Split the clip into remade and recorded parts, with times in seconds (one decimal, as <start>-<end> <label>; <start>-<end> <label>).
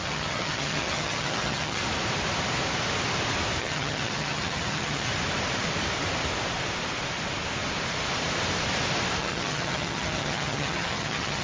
0.0-1.8 remade; 1.8-3.6 recorded; 3.6-5.1 remade; 5.1-9.2 recorded; 9.2-11.4 remade